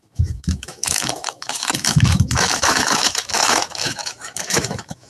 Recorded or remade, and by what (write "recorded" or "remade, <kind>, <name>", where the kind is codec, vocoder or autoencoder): remade, autoencoder, DAC-VAE